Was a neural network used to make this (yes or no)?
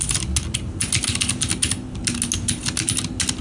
no